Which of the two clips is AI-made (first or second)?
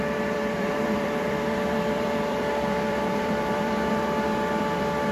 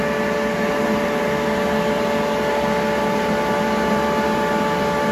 first